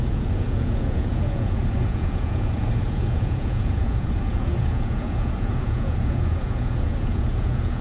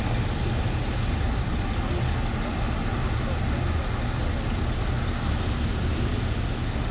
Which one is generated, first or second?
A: first